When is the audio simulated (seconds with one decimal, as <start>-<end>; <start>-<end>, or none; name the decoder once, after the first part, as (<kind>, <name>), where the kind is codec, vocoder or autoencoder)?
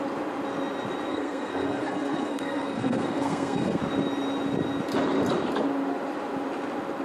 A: 1.1-3.8 (codec, SNAC)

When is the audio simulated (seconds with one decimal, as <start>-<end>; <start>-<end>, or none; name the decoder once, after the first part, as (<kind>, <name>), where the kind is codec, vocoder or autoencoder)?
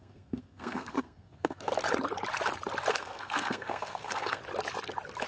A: 0.0-1.7 (codec, SNAC); 2.9-4.4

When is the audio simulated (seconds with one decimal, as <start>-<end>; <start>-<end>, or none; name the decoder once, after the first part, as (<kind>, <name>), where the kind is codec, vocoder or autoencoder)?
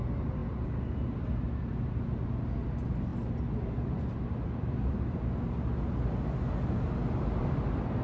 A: none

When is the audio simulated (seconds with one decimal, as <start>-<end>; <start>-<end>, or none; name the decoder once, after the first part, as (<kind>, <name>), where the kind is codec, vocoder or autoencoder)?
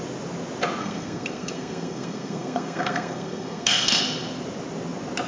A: 0.8-4.0 (codec, SNAC)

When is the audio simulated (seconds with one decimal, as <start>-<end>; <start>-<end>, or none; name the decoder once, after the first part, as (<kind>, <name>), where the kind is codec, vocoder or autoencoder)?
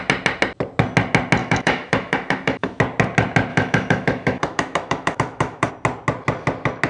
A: 1.4-2.8 (autoencoder, DAC-VAE); 3.5-5.7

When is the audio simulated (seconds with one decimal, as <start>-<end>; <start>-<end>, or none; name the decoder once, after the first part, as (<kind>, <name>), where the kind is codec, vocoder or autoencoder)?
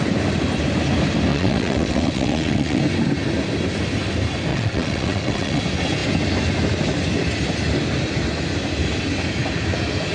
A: 1.3-2.8 (vocoder, WaveNeXt); 4.5-5.6